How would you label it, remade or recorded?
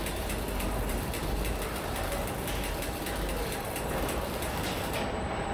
remade